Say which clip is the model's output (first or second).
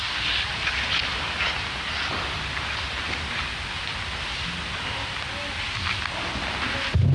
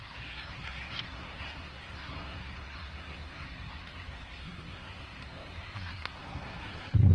second